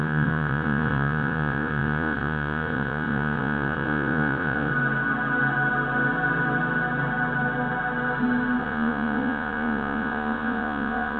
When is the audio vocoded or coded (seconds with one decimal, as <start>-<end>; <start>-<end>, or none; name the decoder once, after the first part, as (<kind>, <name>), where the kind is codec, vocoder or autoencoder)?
0.0-4.7 (vocoder, Vocos); 8.6-11.2